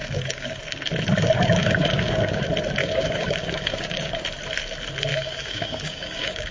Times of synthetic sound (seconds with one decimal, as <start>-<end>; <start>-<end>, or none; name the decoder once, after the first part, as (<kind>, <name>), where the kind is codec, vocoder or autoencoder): 0.0-0.6 (codec, DAC); 1.6-2.4; 2.8-4.2; 5.1-6.5